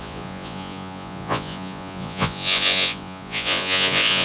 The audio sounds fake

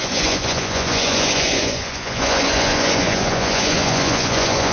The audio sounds fake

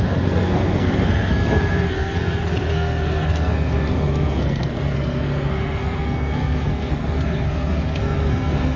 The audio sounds fake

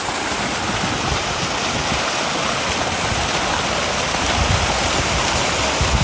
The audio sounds real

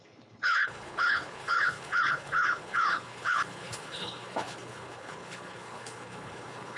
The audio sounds fake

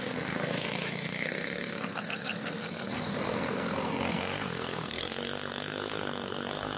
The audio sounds fake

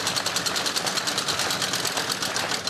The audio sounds real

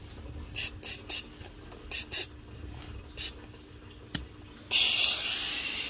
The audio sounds real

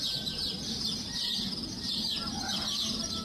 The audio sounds real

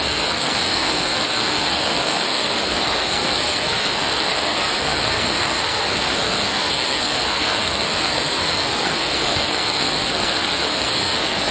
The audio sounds fake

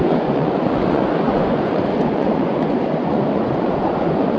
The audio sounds fake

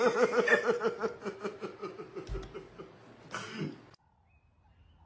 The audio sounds real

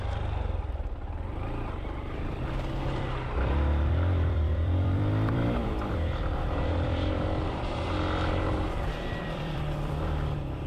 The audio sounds fake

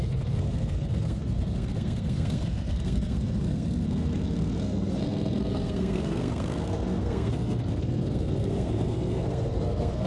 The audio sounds fake